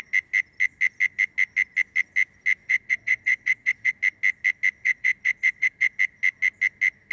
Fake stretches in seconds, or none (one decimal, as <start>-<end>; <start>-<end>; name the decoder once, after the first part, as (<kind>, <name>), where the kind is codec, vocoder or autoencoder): 2.6-3.9 (vocoder, Vocos); 4.8-6.0